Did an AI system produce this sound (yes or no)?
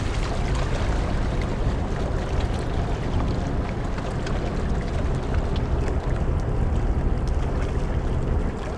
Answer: no